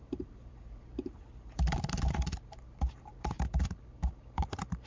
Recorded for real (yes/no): no